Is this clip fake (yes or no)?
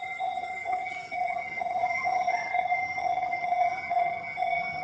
yes